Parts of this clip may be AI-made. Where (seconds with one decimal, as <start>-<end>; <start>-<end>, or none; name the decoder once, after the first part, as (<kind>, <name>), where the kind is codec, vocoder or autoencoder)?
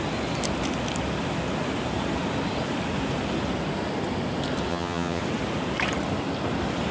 4.7-5.2 (vocoder, HiFi-GAN)